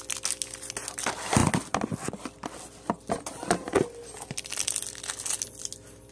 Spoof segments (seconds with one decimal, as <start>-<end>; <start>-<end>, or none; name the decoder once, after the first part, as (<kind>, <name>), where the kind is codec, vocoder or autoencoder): none